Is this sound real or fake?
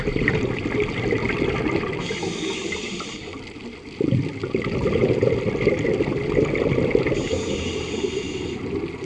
real